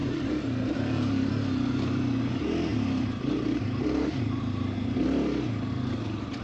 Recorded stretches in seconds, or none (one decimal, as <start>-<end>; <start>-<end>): 1.3-2.7; 4.9-6.4